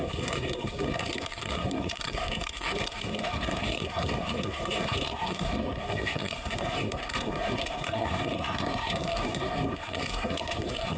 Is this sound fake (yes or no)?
yes